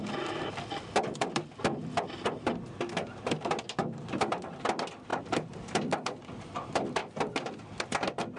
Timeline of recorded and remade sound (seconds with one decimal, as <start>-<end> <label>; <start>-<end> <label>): 0.0-3.8 recorded; 3.8-4.4 remade; 4.4-5.1 recorded; 5.1-5.9 remade; 5.9-8.4 recorded